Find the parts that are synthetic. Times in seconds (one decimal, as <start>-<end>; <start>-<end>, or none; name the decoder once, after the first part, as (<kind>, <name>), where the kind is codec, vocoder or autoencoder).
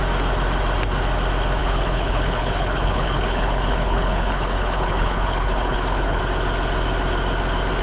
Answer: 1.6-6.2 (codec, HILCodec)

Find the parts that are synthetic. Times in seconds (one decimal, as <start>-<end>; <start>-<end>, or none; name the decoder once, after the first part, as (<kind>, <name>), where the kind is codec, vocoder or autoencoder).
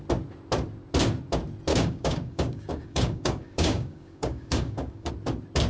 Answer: 1.7-5.1 (codec, DAC)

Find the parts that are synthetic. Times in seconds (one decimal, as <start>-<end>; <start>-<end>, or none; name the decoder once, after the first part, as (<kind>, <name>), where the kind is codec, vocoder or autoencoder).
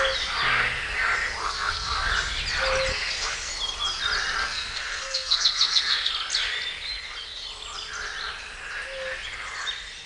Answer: 1.4-2.1 (codec, SNAC); 2.9-3.5; 4.4-6.1